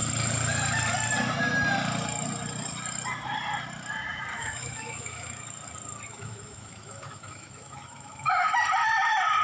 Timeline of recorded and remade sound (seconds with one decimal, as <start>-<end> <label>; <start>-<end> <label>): 0.0-4.3 recorded; 4.3-5.4 remade; 5.4-6.1 recorded; 6.1-8.5 remade; 8.5-9.4 recorded

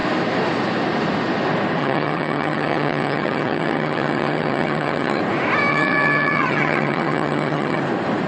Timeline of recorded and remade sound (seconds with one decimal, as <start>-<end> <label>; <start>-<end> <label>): 0.0-1.8 recorded; 1.8-5.2 remade; 5.2-5.7 recorded; 5.7-7.8 remade; 7.8-8.3 recorded

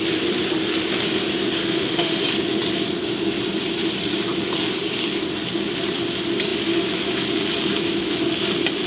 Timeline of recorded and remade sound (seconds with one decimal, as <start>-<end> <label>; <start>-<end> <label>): 0.0-1.6 recorded; 1.6-2.2 remade; 2.2-8.9 recorded

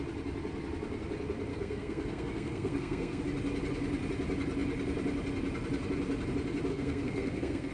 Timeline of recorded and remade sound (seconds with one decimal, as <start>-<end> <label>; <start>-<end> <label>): 0.0-1.5 recorded; 1.5-3.2 remade; 3.2-6.7 recorded; 6.7-7.7 remade